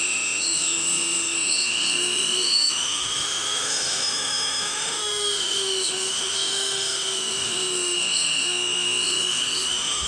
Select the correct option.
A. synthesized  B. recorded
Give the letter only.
A